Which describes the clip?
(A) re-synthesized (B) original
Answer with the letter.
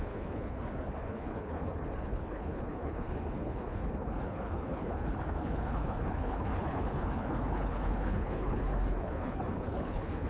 A